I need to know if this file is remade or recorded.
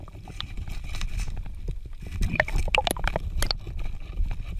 recorded